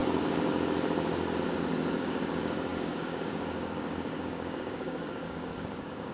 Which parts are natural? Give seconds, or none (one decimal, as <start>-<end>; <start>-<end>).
0.0-1.7